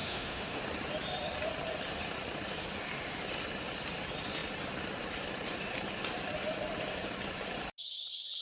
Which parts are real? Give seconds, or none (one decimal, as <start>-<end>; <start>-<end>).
0.6-8.4